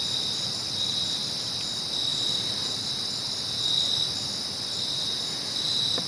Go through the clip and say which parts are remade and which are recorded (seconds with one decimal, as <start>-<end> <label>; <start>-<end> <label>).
0.0-6.1 recorded